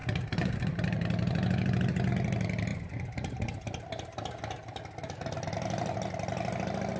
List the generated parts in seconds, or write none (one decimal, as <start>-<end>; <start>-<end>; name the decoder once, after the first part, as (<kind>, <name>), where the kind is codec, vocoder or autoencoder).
0.0-2.1 (vocoder, BigVGAN v2); 2.7-4.8